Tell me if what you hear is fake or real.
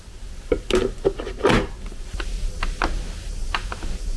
real